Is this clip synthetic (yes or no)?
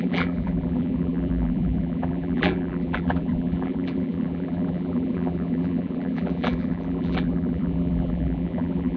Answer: yes